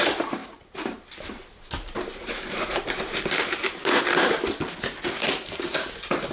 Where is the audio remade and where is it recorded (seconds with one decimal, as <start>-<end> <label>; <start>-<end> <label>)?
0.0-0.4 recorded; 0.4-4.0 remade; 4.0-6.3 recorded